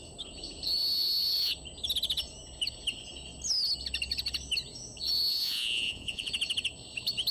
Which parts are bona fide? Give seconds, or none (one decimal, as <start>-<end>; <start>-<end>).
0.0-5.3; 6.3-7.3